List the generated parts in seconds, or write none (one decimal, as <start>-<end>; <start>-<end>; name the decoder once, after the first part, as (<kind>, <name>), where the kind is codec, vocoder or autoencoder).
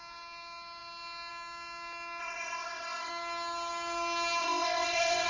2.2-3.1 (codec, ZipCodec); 4.4-5.3